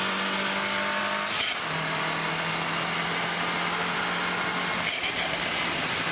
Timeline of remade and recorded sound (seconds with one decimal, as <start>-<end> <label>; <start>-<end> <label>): 0.0-6.1 recorded

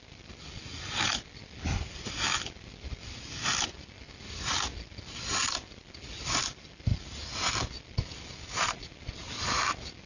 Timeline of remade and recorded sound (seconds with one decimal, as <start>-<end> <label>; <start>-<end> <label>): 0.0-10.1 recorded

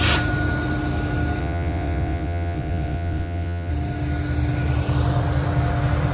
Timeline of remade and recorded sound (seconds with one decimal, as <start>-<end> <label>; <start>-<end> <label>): 0.0-1.4 recorded; 1.4-3.7 remade; 3.7-6.1 recorded

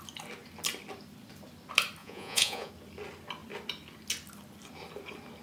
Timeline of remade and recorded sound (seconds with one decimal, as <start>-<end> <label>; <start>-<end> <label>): 0.0-2.0 recorded; 2.0-2.7 remade; 2.7-5.4 recorded

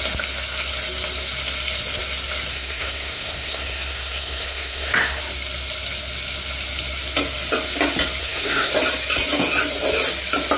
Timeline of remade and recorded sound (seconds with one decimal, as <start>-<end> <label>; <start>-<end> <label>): 0.0-2.5 recorded; 2.5-5.2 remade; 5.2-8.2 recorded; 8.2-8.7 remade; 8.7-10.6 recorded